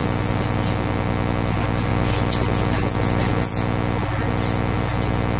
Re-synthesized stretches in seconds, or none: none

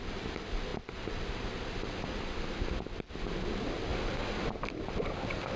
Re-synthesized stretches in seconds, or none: none

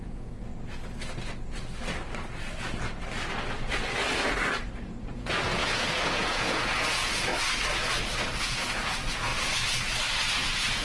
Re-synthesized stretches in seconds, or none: 0.0-0.5 (vocoder, Vocos); 4.8-7.3; 8.4-9.3; 10.4-10.8

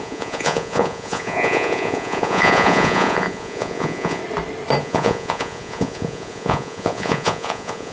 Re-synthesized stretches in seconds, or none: 0.0-4.2 (vocoder, Vocos); 4.8-7.9

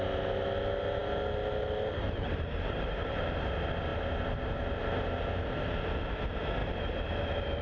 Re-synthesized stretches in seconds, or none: none